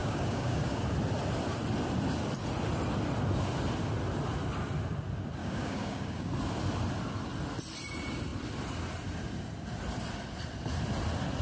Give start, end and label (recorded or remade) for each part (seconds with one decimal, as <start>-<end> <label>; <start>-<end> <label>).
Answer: 0.0-0.8 remade; 0.8-5.4 recorded; 5.4-6.3 remade; 6.3-11.4 recorded

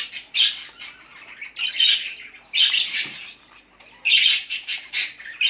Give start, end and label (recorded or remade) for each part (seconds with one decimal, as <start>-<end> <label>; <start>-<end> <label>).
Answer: 0.0-4.4 recorded; 4.4-5.1 remade; 5.1-5.5 recorded